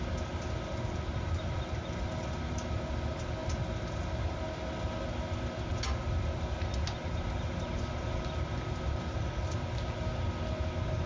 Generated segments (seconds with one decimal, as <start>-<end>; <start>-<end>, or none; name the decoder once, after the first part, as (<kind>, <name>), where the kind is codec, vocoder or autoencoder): none